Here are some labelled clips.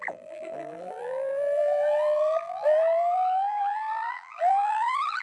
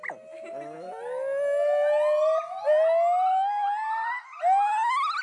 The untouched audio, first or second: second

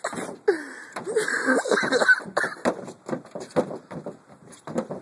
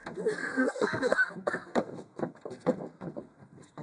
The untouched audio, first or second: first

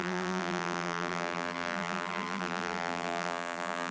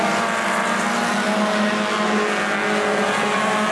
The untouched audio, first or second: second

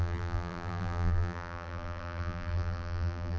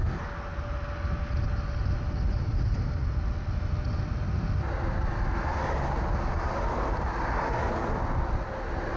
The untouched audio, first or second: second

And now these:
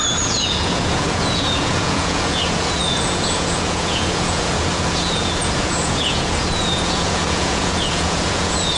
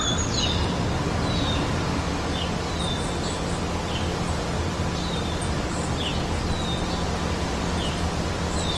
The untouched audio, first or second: second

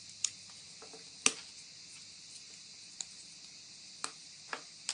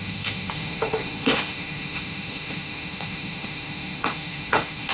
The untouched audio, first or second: first